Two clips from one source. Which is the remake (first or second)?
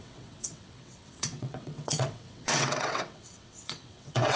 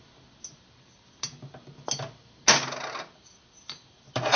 first